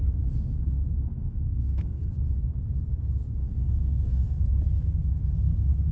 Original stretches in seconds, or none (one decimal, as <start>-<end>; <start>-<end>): 0.0-1.1; 2.1-3.4; 4.4-5.9

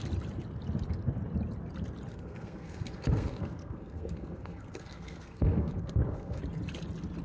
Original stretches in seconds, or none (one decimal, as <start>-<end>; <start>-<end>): 0.0-2.1; 6.4-7.2

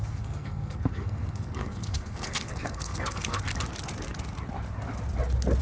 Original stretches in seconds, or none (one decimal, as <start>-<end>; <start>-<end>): 3.4-5.6

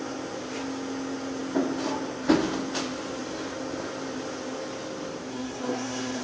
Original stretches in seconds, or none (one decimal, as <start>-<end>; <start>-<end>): 0.0-5.3